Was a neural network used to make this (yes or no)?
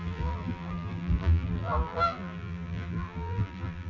yes